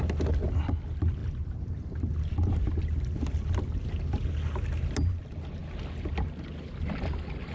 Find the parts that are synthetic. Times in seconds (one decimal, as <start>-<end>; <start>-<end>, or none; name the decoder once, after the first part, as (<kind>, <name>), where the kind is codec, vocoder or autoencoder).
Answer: none